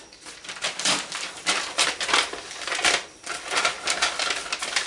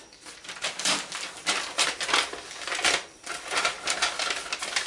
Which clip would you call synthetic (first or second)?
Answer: first